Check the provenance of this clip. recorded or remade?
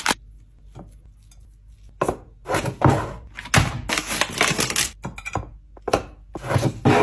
recorded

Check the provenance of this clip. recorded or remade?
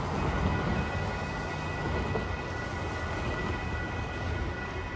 recorded